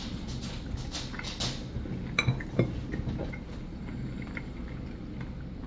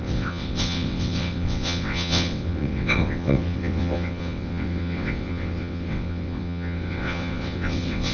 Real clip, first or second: first